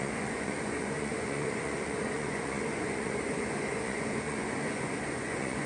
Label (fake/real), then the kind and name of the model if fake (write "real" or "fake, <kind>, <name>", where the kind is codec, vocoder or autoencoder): fake, vocoder, Vocos